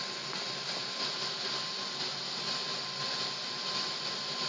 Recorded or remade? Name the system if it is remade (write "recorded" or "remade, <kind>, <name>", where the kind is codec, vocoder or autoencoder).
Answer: recorded